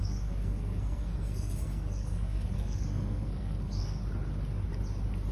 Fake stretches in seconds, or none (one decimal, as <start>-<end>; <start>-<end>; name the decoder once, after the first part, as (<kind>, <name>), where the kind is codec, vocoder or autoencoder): 0.0-4.0 (codec, SNAC)